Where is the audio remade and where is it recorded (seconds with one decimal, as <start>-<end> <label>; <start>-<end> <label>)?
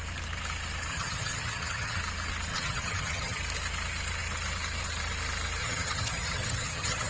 0.0-0.9 recorded; 0.9-2.0 remade; 2.0-2.5 recorded; 2.5-3.4 remade; 3.4-5.6 recorded; 5.6-7.1 remade